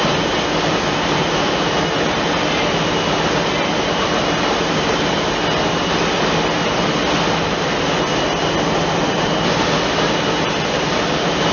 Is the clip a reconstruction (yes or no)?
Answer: no